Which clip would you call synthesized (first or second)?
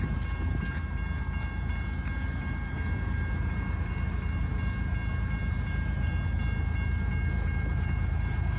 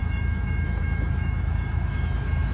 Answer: second